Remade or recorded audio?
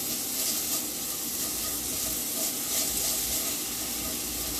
recorded